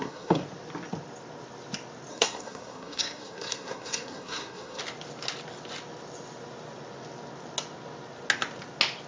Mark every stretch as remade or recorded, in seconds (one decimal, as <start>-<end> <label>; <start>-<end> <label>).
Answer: 0.0-0.4 remade; 0.4-2.1 recorded; 2.1-4.8 remade; 4.8-9.1 recorded